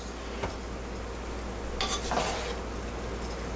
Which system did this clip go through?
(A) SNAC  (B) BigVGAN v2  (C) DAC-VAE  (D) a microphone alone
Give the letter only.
D